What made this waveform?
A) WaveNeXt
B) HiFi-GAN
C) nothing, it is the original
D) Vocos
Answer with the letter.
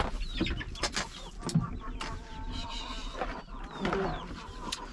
C